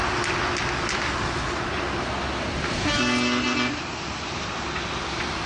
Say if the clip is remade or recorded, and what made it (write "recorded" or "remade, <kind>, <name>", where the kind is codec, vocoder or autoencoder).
recorded